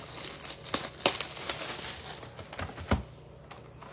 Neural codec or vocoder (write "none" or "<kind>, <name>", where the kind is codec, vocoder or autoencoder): none